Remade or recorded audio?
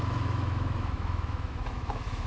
remade